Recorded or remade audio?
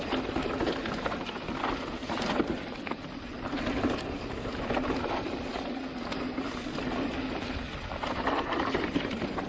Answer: recorded